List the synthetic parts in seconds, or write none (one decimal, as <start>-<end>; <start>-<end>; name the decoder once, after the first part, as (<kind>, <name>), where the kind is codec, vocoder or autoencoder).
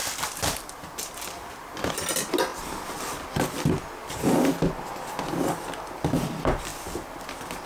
0.0-1.5 (vocoder, BigVGAN v2); 2.5-3.7; 6.7-7.3